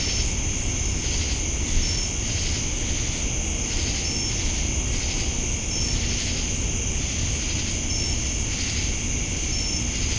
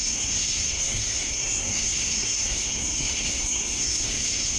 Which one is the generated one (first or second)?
second